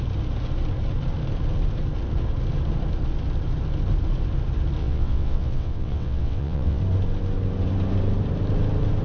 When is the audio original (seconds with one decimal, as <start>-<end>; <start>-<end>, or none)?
0.0-4.8; 6.8-9.0